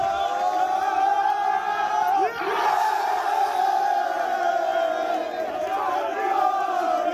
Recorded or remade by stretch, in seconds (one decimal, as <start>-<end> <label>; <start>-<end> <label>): 0.0-7.1 recorded